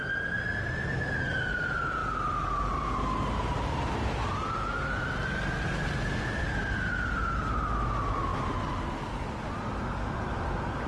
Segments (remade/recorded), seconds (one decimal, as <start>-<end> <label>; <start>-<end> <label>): 0.0-10.9 recorded

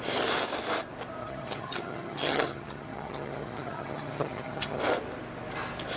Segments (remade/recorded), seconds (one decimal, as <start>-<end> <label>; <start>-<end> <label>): 0.0-1.2 recorded; 1.2-4.8 remade; 4.8-6.0 recorded

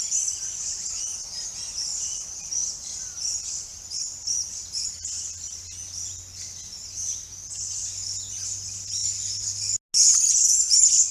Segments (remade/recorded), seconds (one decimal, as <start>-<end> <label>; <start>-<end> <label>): 0.0-1.9 recorded; 1.9-3.2 remade; 3.2-11.1 recorded

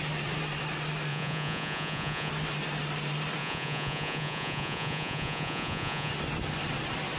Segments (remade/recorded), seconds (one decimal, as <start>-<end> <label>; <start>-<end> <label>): 0.0-1.1 recorded; 1.1-2.3 remade; 2.3-3.4 recorded; 3.4-6.1 remade; 6.1-7.2 recorded

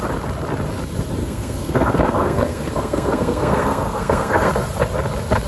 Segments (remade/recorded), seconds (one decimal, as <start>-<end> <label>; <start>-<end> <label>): 0.0-1.2 recorded; 1.2-4.5 remade; 4.5-5.5 recorded

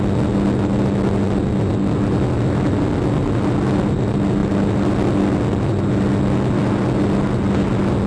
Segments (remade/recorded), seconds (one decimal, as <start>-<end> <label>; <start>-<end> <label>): 0.0-8.1 recorded

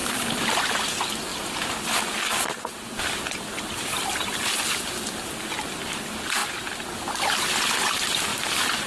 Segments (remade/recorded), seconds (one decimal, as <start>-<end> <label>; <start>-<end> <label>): 0.0-0.8 remade; 0.8-8.9 recorded

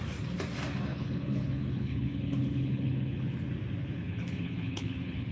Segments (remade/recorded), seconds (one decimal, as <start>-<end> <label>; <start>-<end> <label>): 0.0-0.9 recorded; 0.9-3.3 remade; 3.3-3.8 recorded; 3.8-5.3 remade